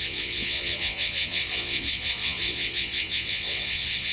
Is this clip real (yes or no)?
no